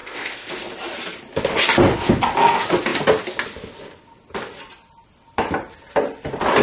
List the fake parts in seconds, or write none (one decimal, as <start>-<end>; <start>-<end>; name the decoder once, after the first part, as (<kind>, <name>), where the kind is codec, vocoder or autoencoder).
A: 0.0-0.5 (codec, ZipCodec)